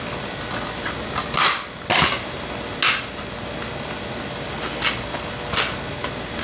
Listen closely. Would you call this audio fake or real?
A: real